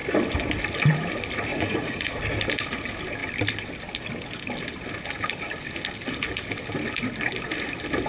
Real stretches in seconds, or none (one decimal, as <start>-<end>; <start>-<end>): 0.0-1.5; 2.1-8.1